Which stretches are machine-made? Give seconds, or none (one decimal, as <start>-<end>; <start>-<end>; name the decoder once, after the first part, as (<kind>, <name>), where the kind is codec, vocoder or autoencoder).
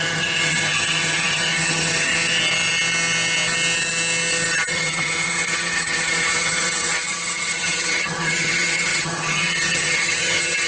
0.0-2.1 (vocoder, HiFi-GAN); 4.7-10.7